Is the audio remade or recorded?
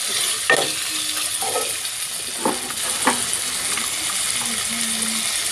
recorded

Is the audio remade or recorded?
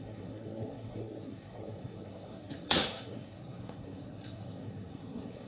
remade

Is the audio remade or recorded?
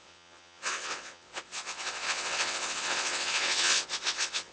remade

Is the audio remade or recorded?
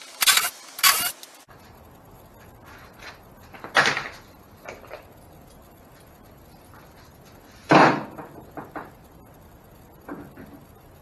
recorded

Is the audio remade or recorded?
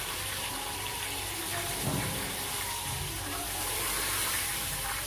remade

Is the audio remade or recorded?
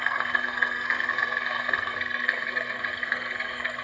remade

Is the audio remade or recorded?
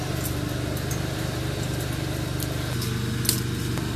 recorded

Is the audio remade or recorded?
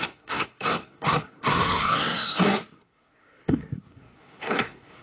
remade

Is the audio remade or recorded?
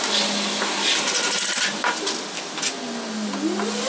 recorded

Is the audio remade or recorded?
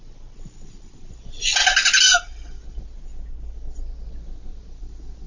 recorded